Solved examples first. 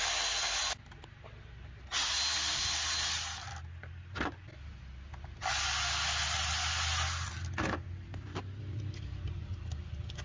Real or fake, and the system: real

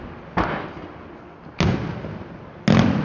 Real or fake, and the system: real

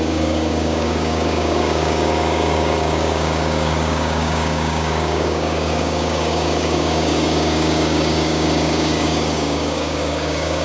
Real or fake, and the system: fake, codec, DAC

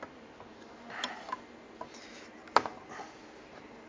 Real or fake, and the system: real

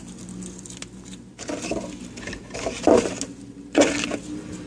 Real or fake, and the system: real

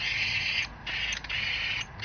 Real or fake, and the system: real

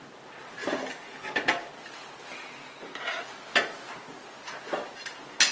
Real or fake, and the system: real